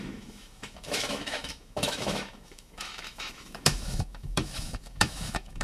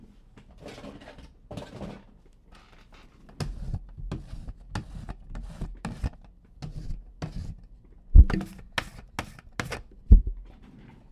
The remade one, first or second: first